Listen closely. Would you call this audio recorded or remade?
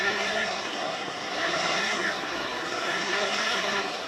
remade